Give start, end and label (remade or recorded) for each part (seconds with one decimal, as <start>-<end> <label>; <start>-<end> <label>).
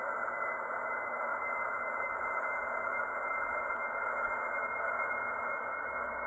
0.0-1.3 recorded; 1.3-3.0 remade; 3.0-6.3 recorded